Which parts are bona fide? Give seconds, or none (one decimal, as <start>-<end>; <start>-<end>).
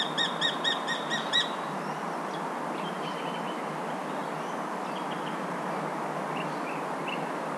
0.0-7.6